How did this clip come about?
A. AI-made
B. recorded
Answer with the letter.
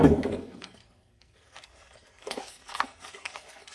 A